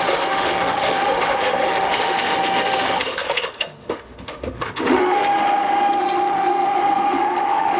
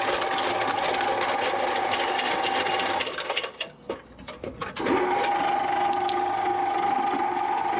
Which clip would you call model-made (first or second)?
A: first